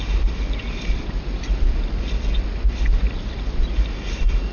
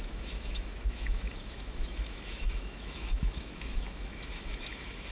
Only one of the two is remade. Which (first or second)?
second